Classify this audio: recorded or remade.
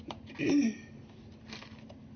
recorded